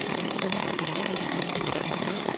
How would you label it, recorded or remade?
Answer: remade